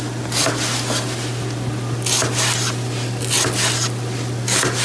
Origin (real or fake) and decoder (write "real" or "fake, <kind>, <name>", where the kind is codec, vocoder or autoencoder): real